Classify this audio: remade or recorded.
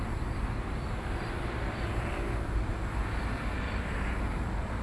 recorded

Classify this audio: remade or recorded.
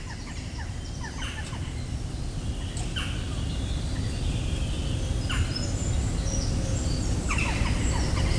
recorded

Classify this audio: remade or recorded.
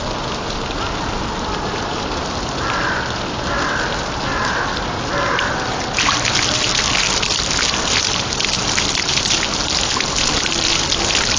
recorded